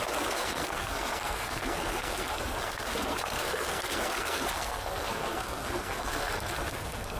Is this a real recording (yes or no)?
no